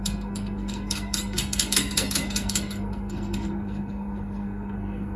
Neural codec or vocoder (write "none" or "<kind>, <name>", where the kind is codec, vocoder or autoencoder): codec, SNAC